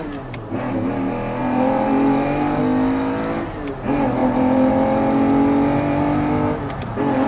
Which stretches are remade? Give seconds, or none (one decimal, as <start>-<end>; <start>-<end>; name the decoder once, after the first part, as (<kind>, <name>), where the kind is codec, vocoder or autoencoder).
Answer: 1.4-2.6 (vocoder, BigVGAN v2); 4.2-4.7